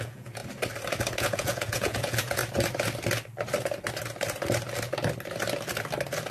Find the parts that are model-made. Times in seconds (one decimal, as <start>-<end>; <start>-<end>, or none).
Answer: 0.0-0.4; 1.2-2.4